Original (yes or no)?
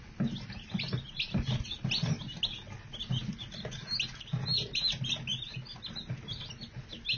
yes